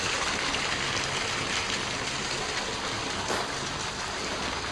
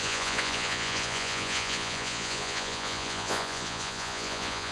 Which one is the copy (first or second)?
second